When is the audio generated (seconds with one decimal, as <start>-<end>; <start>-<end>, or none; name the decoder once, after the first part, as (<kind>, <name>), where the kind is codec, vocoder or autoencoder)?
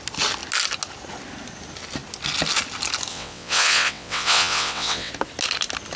3.1-5.1 (vocoder, WaveNeXt)